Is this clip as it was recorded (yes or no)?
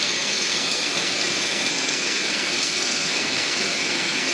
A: no